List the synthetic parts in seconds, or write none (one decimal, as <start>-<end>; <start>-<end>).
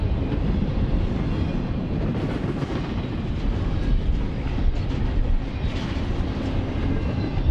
none